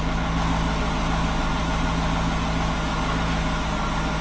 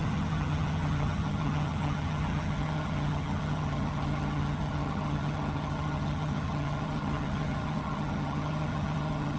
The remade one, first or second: second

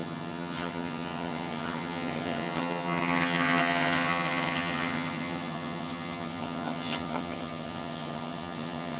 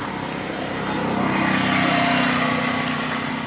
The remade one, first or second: first